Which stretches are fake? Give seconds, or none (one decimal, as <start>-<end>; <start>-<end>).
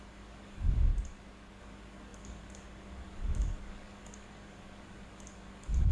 0.0-0.9; 1.6-5.9